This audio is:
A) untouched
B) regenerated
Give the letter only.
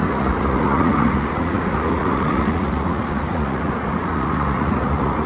B